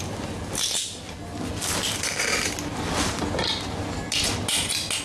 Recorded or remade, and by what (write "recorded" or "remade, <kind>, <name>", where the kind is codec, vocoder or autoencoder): recorded